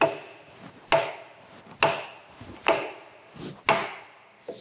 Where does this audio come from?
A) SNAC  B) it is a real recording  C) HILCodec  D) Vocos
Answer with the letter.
B